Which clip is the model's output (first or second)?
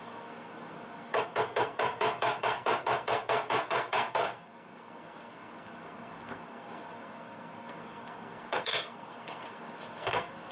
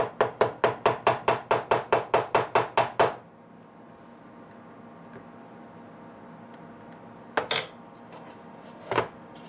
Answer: first